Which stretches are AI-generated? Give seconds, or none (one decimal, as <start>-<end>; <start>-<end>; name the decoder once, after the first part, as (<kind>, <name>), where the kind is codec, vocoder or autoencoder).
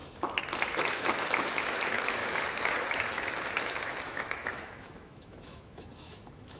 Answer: 0.7-6.6 (autoencoder, DAC-VAE)